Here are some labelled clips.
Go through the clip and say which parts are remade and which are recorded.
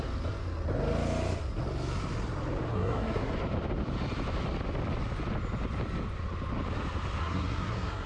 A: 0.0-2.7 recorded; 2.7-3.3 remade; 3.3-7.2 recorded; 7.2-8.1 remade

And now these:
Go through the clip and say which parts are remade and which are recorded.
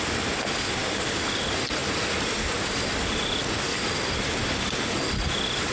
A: 0.0-5.7 recorded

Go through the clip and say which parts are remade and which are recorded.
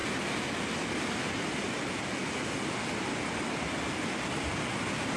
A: 0.0-5.2 recorded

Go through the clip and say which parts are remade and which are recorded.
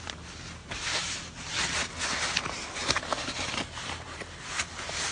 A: 0.0-0.6 recorded; 0.6-2.3 remade; 2.3-2.8 recorded; 2.8-3.4 remade; 3.4-5.1 recorded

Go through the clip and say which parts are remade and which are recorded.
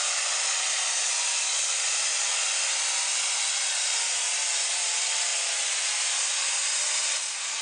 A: 0.0-7.6 recorded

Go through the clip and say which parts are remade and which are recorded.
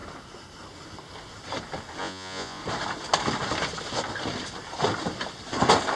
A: 0.0-2.0 recorded; 2.0-2.6 remade; 2.6-6.0 recorded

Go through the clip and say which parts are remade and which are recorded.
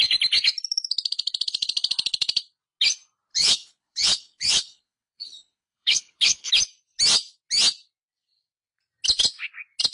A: 0.0-3.3 recorded; 3.3-6.5 remade; 6.5-9.9 recorded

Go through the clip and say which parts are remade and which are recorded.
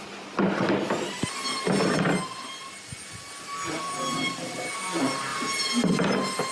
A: 0.0-6.5 recorded